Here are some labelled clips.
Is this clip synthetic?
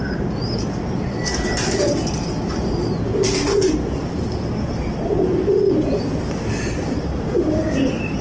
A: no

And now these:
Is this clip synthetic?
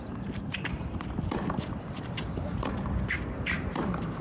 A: yes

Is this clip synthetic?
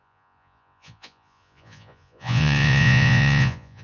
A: yes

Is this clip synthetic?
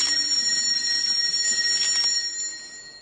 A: no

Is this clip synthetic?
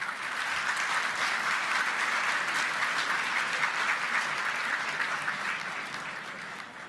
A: no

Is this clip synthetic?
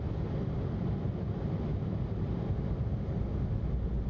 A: no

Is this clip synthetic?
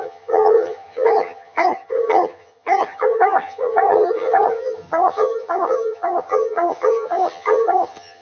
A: yes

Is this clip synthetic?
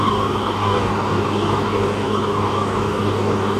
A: yes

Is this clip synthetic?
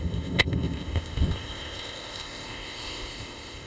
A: yes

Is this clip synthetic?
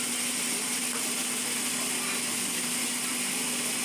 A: no